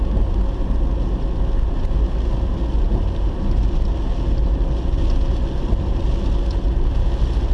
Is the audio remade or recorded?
recorded